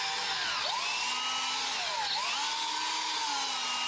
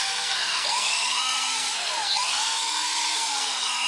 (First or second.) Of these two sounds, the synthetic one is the second